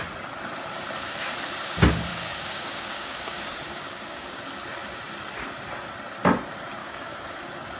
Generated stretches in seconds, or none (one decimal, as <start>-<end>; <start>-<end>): 2.1-4.4; 6.8-7.3